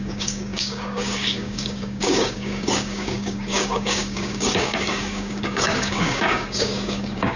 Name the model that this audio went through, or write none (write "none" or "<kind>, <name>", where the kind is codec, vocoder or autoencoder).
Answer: codec, DAC